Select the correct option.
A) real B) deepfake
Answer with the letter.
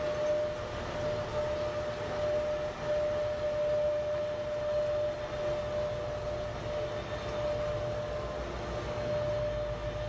A